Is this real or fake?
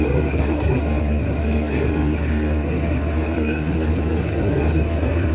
fake